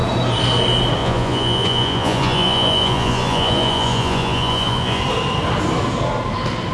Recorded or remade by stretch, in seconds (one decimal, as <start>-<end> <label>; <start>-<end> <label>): 0.0-1.0 recorded; 1.0-5.0 remade; 5.0-6.7 recorded